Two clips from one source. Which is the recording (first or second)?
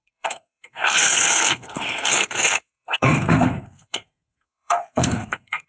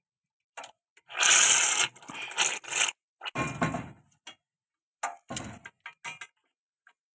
second